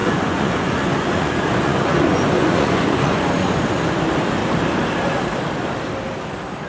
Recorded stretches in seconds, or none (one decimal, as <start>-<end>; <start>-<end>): 4.0-6.7